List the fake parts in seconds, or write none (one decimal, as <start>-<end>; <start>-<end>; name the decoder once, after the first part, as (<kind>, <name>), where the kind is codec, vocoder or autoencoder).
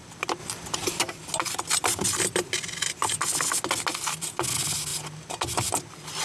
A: none